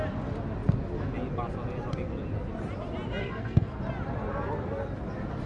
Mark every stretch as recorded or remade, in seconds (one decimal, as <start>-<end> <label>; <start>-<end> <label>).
0.0-3.2 recorded; 3.2-3.8 remade; 3.8-5.5 recorded